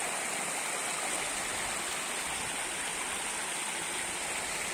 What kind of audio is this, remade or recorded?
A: recorded